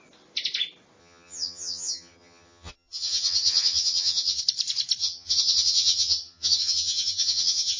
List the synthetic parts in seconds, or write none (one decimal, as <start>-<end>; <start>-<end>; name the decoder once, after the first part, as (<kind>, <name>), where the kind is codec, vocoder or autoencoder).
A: 1.0-4.4 (vocoder, HiFi-GAN); 5.0-7.8